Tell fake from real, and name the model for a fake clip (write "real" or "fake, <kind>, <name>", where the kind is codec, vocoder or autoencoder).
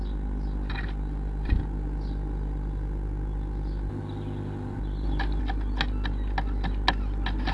real